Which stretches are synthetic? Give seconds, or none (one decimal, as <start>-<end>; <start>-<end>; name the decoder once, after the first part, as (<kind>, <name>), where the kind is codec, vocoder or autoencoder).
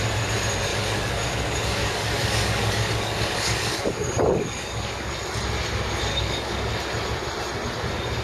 0.7-5.1 (codec, DAC); 6.1-6.7